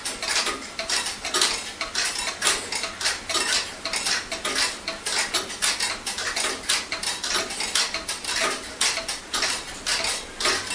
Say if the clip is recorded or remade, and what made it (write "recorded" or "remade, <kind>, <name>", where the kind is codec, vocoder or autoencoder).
recorded